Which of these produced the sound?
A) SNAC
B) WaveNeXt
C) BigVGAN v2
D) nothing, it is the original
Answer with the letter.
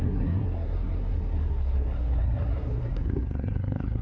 A